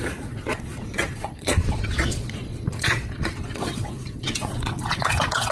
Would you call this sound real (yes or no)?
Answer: no